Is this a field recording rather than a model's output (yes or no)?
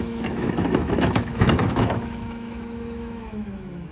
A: no